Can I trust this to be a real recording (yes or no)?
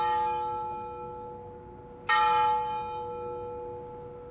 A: yes